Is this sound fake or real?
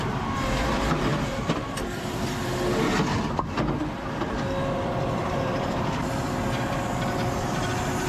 fake